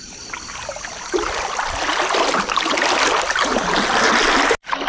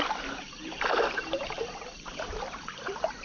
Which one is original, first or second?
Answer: first